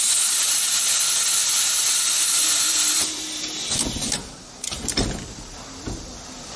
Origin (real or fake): real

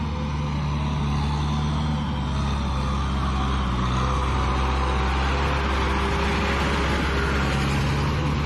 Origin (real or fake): real